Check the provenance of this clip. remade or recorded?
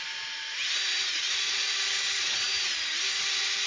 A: recorded